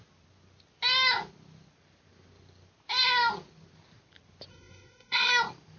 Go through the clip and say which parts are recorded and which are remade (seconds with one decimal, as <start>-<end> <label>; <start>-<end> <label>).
0.0-4.5 recorded; 4.5-5.3 remade; 5.3-5.8 recorded